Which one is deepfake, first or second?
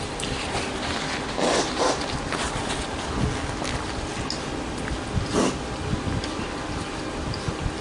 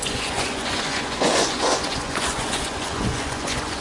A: second